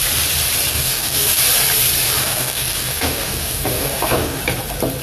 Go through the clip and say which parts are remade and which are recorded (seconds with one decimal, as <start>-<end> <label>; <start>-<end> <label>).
0.0-0.7 recorded; 0.7-1.4 remade; 1.4-2.2 recorded; 2.2-4.4 remade; 4.4-5.0 recorded